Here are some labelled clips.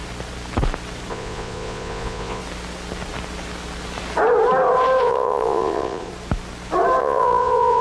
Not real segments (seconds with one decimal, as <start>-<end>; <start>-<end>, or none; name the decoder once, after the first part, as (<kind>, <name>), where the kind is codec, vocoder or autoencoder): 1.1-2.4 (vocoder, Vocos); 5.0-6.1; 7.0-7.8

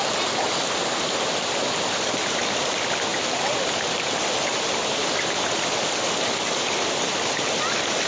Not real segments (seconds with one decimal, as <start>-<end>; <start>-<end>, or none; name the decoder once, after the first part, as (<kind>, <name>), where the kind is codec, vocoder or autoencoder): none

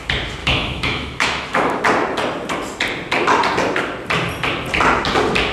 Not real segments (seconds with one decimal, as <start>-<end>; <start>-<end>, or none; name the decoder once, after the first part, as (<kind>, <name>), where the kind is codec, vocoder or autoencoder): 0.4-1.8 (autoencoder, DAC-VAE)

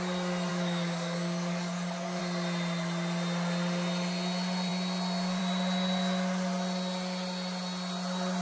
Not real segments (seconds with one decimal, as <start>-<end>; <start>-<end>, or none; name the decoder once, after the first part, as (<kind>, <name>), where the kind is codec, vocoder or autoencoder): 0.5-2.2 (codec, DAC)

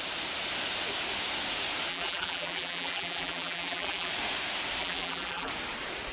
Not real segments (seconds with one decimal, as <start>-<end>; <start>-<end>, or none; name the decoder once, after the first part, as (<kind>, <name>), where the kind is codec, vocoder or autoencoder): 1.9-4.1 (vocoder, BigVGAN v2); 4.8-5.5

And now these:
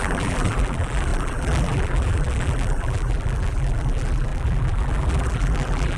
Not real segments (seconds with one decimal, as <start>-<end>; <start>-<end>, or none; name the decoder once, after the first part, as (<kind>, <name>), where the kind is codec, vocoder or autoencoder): 0.0-6.0 (vocoder, BigVGAN v2)

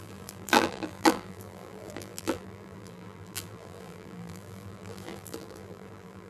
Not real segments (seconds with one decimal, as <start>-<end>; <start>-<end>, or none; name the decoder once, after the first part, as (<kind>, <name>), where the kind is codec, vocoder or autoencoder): 0.0-6.3 (vocoder, BigVGAN v2)

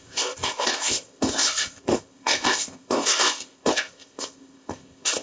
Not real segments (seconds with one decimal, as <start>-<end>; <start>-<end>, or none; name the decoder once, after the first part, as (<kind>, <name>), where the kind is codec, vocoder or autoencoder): 0.0-5.2 (codec, ZipCodec)